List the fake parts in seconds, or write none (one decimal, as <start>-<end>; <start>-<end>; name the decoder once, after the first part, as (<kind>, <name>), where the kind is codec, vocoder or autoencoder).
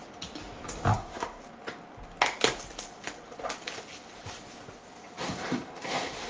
0.9-1.4 (codec, SNAC); 5.2-6.3